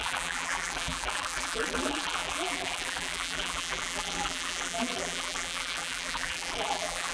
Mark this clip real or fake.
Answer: fake